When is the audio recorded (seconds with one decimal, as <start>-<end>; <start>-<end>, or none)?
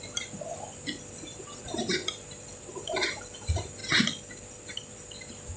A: 0.0-5.6